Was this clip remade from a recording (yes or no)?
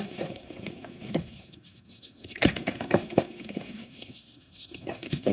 yes